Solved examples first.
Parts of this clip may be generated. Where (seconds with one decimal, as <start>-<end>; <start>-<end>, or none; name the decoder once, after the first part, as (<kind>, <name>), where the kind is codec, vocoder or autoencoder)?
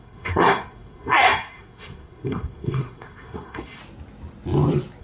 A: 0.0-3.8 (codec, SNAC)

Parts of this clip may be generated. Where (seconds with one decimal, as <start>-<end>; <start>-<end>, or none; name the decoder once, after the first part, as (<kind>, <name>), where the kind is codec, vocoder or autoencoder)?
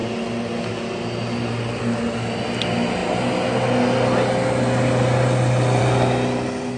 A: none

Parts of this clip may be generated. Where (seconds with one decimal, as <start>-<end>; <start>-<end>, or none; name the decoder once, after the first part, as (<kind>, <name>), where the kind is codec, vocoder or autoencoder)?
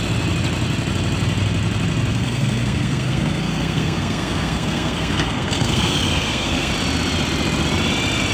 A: 2.1-6.7 (codec, SNAC)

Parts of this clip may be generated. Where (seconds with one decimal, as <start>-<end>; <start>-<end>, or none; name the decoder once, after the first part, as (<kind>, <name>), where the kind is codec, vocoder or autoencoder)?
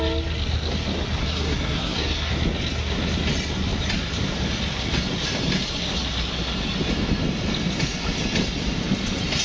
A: 1.2-2.3 (codec, SNAC)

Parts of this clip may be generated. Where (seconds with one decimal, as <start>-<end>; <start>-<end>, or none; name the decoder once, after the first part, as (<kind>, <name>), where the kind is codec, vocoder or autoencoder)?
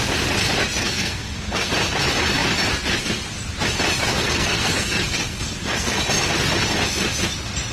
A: 0.8-1.7 (codec, SNAC); 4.1-6.0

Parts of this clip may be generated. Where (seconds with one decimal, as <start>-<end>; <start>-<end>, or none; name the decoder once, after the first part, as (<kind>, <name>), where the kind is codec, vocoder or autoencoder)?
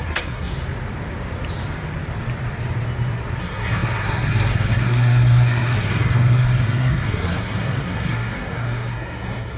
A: 0.0-0.5 (codec, SNAC); 3.4-9.6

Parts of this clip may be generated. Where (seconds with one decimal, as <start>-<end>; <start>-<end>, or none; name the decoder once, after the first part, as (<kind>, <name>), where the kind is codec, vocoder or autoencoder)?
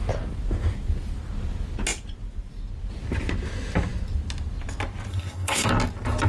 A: 5.1-5.7 (codec, SNAC)